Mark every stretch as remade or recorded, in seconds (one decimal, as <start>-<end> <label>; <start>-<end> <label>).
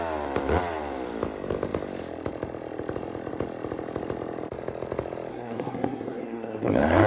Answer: 0.0-5.3 recorded; 5.3-7.1 remade